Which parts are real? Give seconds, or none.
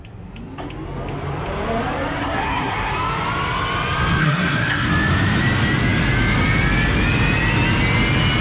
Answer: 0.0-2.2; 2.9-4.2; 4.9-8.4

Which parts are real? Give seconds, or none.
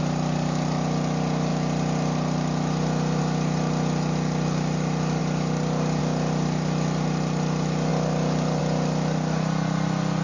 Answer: 0.0-10.2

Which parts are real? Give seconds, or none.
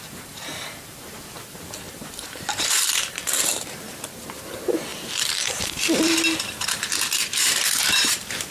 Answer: none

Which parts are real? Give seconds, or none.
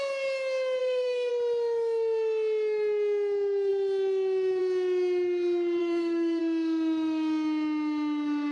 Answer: 0.0-0.8; 1.3-5.8; 6.4-8.5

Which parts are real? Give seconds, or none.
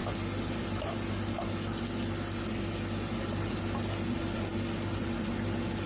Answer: 0.0-3.5; 4.5-5.0